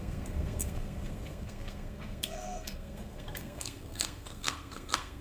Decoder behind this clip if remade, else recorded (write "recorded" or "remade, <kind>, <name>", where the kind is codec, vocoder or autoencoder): remade, codec, SNAC